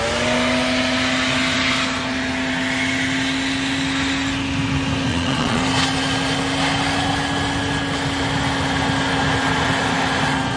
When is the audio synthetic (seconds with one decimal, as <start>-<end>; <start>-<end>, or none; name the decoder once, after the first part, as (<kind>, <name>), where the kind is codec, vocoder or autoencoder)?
5.1-5.6 (vocoder, Vocos)